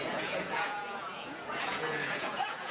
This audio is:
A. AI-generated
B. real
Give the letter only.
A